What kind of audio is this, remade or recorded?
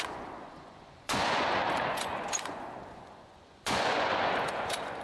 remade